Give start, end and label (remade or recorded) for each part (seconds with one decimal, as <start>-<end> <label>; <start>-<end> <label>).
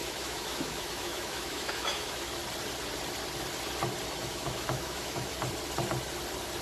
0.0-2.4 remade; 2.4-4.2 recorded; 4.2-5.3 remade; 5.3-6.6 recorded